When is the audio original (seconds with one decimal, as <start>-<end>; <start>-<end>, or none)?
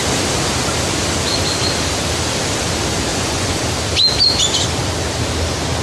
0.0-3.1; 3.6-5.8